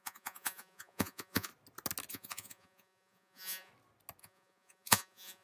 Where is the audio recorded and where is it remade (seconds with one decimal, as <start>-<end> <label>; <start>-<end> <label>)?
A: 0.0-1.5 remade; 1.5-2.1 recorded; 2.1-3.7 remade; 3.7-4.2 recorded; 4.2-5.4 remade

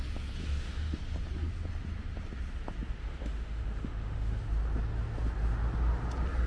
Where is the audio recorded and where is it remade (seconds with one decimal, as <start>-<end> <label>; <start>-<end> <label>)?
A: 0.0-0.4 recorded; 0.4-1.0 remade; 1.0-3.0 recorded; 3.0-4.4 remade; 4.4-6.5 recorded